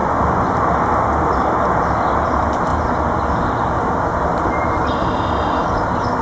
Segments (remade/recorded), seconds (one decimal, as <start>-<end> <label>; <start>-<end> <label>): 0.0-0.5 remade; 0.5-6.2 recorded